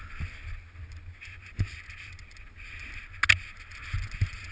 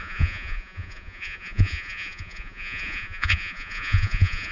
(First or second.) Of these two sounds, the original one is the first